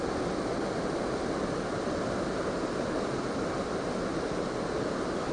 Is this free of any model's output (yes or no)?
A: yes